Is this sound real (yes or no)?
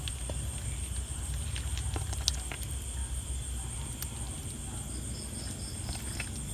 yes